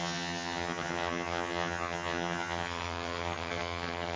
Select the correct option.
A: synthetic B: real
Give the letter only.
A